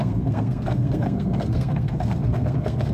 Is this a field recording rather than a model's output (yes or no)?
no